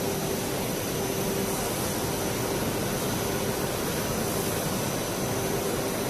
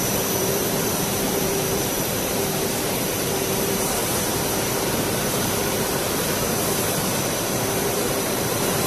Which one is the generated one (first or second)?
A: second